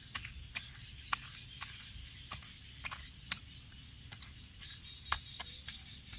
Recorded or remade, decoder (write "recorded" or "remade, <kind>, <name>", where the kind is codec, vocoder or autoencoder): recorded